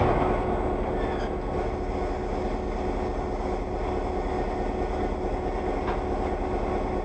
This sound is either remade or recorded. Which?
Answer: recorded